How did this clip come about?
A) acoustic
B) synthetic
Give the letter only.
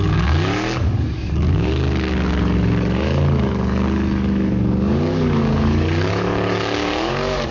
B